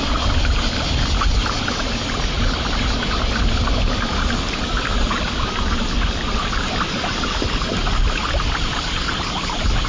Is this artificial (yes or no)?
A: no